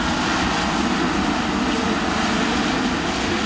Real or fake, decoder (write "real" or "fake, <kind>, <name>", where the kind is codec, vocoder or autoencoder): real